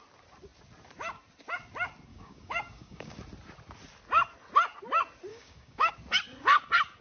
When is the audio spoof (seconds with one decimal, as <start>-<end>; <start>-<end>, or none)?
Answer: 2.1-3.1; 5.3-5.9